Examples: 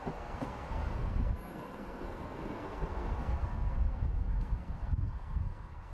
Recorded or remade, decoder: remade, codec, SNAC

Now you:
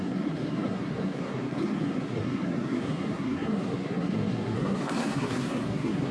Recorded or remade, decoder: remade, codec, SNAC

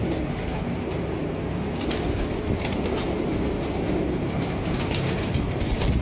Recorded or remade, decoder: recorded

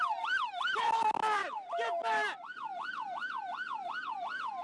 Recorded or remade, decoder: remade, vocoder, BigVGAN v2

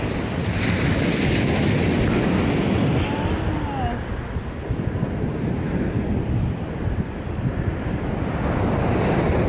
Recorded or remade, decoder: recorded